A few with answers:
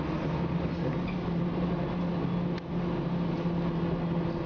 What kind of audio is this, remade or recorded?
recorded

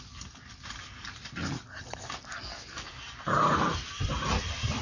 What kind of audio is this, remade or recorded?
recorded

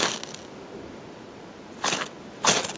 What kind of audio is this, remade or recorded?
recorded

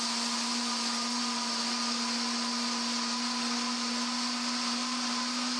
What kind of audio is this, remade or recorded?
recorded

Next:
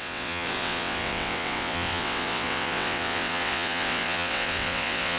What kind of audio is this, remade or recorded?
remade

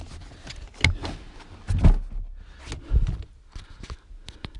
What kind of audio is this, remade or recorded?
recorded